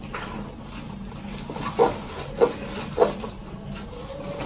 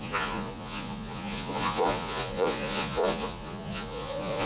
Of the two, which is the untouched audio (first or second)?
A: first